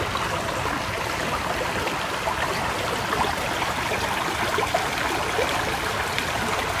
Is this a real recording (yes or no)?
yes